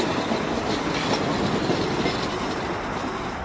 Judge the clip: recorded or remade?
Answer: recorded